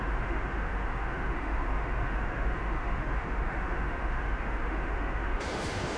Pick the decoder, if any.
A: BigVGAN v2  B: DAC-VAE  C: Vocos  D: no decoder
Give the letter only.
B